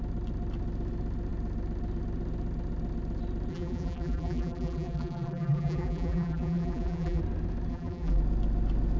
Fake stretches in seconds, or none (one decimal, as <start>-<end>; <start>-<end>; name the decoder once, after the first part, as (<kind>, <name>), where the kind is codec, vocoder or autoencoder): 3.5-7.2 (vocoder, BigVGAN v2); 7.7-8.2